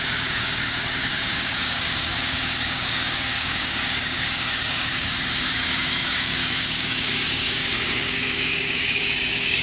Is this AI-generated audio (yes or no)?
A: yes